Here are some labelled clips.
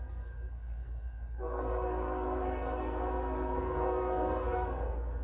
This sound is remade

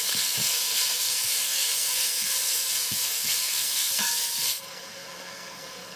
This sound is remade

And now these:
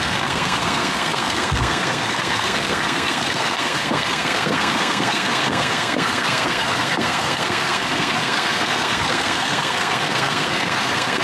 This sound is remade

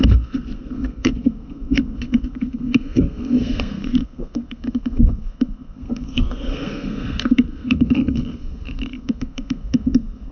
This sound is remade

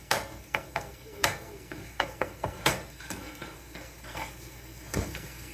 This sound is remade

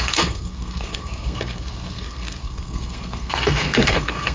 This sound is remade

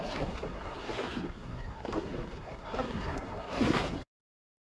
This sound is remade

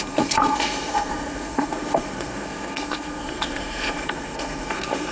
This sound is remade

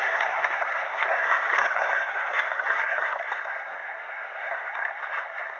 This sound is remade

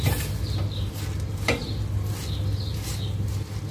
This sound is recorded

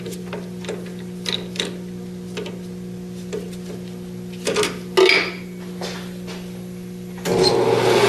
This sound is recorded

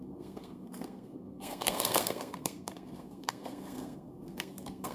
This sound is remade